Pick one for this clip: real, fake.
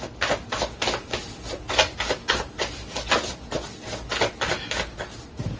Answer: real